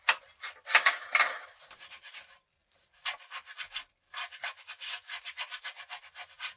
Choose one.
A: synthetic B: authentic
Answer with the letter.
B